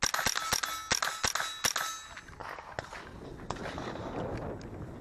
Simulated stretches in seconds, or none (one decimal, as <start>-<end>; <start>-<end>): none